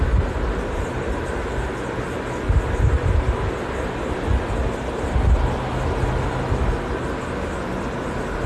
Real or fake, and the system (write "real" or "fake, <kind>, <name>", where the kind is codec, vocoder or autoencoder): real